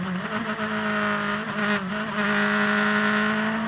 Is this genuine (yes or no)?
yes